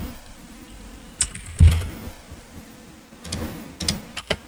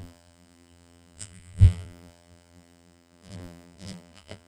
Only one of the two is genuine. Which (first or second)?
first